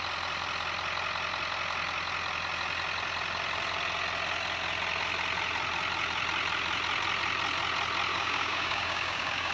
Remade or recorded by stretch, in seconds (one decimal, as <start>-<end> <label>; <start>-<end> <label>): 0.0-8.1 recorded; 8.1-9.5 remade

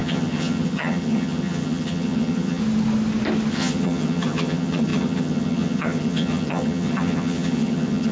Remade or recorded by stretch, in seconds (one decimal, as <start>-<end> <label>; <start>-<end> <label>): 0.0-2.6 remade; 2.6-3.5 recorded; 3.5-8.1 remade

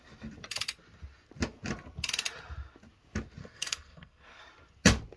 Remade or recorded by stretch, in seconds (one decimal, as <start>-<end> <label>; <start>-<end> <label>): 0.0-3.4 recorded; 3.4-4.4 remade; 4.4-5.2 recorded

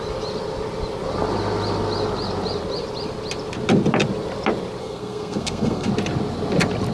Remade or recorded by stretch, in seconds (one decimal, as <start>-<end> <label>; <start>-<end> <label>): 0.0-4.8 recorded; 4.8-5.9 remade; 5.9-6.9 recorded

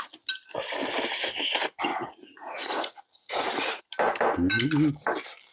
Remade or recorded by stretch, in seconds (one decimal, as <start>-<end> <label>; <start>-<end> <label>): 0.0-1.9 recorded; 1.9-3.8 remade; 3.8-5.5 recorded

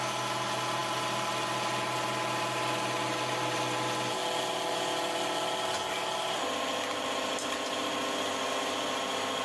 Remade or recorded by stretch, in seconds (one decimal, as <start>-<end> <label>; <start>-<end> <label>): 0.0-9.4 recorded

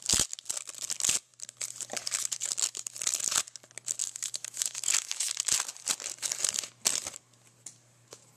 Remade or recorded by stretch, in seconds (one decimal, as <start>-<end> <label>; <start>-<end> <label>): 0.0-4.0 recorded; 4.0-5.3 remade; 5.3-8.4 recorded